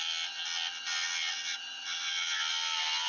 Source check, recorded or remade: recorded